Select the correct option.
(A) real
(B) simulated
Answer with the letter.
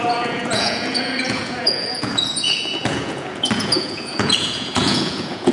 B